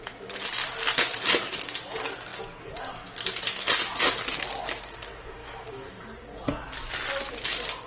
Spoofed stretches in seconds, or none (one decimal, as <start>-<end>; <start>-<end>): 5.4-6.0